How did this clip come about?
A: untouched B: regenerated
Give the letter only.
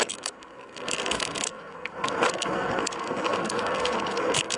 B